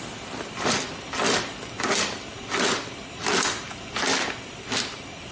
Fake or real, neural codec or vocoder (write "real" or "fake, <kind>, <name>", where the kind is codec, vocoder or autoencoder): real